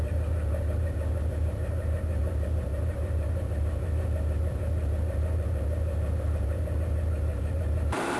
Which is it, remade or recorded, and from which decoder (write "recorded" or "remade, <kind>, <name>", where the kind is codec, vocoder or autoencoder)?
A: remade, vocoder, BigVGAN v2